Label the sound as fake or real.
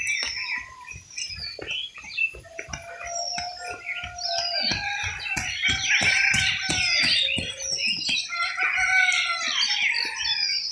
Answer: real